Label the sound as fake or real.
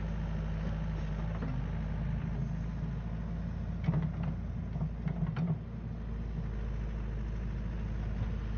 real